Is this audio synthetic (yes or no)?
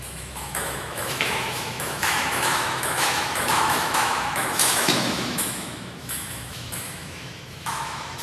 yes